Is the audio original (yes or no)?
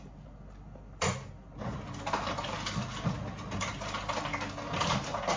yes